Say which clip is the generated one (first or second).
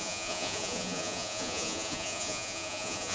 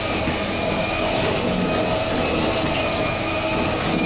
first